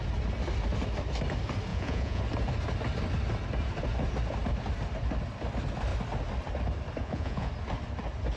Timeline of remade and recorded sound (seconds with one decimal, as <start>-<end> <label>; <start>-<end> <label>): 0.0-1.7 recorded; 1.7-2.2 remade; 2.2-7.0 recorded; 7.0-7.5 remade; 7.5-8.4 recorded